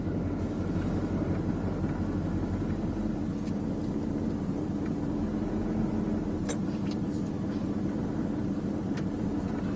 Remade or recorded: recorded